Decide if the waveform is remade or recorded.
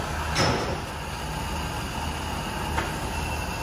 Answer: recorded